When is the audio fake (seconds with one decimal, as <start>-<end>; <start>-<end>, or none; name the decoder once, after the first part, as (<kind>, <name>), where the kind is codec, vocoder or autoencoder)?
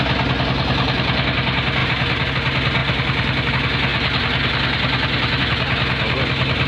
1.8-2.3 (vocoder, BigVGAN v2); 2.8-3.5